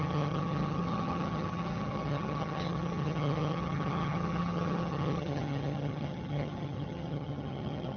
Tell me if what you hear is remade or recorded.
remade